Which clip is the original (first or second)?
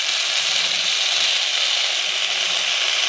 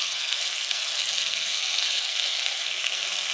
first